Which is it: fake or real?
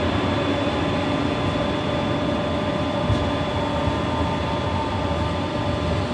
real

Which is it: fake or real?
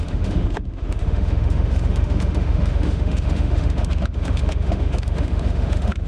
fake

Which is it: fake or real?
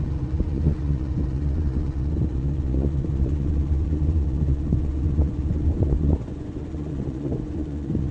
fake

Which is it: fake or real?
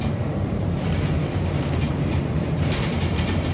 fake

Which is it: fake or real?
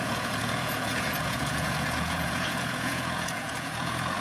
fake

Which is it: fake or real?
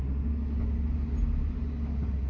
real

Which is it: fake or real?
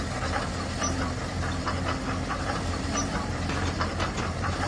fake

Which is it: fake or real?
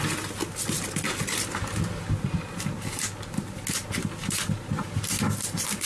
real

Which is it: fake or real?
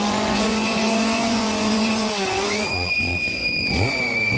fake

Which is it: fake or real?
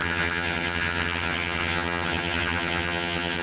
fake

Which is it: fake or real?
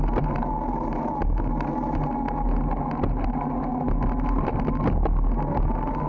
real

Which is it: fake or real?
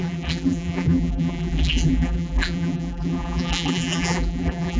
fake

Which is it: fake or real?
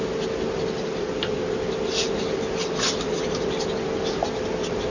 real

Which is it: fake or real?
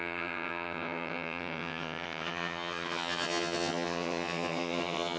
fake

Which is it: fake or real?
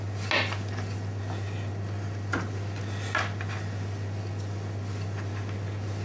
real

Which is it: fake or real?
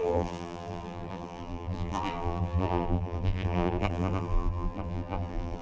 fake